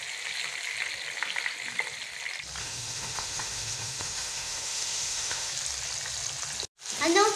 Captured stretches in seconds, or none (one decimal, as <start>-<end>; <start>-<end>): 0.0-2.6; 5.5-7.4